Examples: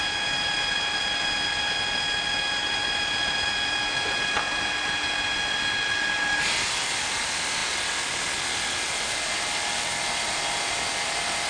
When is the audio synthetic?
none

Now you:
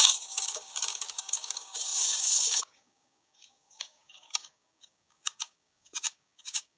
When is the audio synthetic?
0.0-6.8 (codec, DAC)

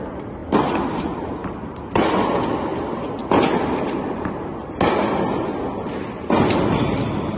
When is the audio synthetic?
none